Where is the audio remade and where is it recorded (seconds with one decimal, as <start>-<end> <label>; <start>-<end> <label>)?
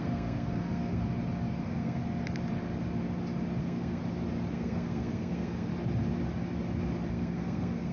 0.0-1.0 remade; 1.0-1.6 recorded; 1.6-2.0 remade; 2.0-3.6 recorded; 3.6-4.0 remade; 4.0-4.5 recorded; 4.5-5.7 remade; 5.7-7.1 recorded; 7.1-7.9 remade